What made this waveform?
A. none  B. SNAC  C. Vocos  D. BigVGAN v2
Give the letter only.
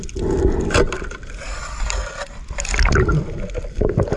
A